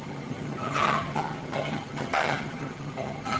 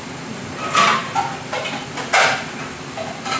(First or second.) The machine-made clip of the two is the first